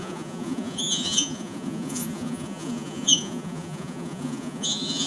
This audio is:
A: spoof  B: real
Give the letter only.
A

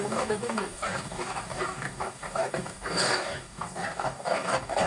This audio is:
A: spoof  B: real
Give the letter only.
A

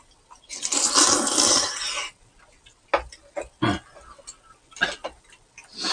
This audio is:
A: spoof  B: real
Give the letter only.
B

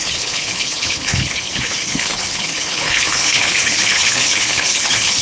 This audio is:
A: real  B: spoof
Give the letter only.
B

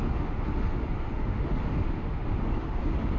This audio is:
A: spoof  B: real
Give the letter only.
A